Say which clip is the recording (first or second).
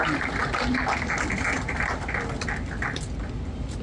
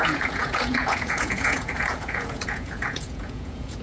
first